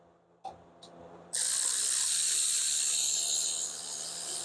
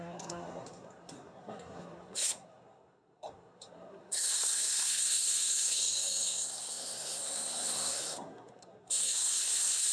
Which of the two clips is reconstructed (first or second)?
second